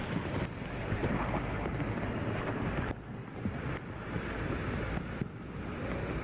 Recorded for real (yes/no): yes